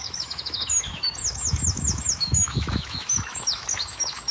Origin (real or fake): fake